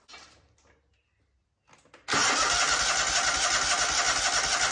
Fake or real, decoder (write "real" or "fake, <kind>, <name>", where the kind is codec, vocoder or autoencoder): real